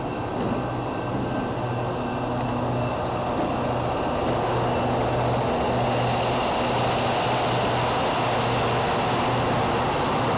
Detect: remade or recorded recorded